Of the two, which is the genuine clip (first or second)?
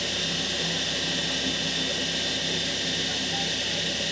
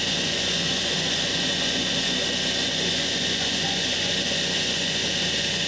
first